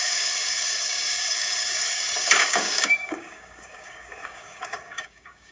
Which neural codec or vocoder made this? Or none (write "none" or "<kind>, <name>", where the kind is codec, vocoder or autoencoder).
codec, DAC